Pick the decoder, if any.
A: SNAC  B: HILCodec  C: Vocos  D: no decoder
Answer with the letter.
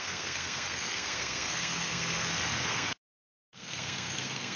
A